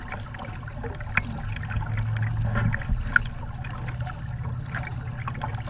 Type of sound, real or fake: real